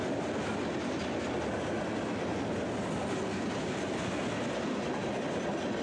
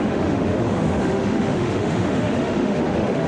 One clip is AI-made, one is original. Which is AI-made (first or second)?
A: second